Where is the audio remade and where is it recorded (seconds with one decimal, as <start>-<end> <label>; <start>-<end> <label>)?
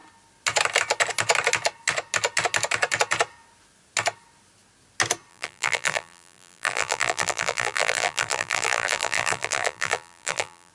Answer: 0.0-5.3 recorded; 5.3-10.7 remade